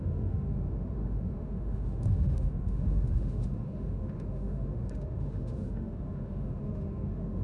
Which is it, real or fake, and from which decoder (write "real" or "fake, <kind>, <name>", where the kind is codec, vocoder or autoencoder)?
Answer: fake, autoencoder, DAC-VAE